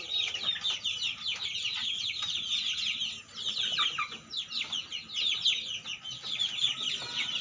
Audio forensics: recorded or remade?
recorded